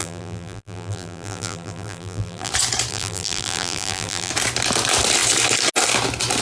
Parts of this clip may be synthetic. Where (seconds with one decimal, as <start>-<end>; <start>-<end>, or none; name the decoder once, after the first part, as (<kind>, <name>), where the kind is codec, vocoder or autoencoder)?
0.0-2.5 (vocoder, BigVGAN v2); 2.9-4.3